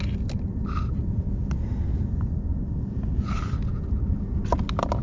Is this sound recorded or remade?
recorded